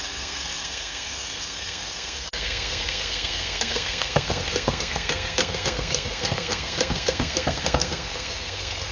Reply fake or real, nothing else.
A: fake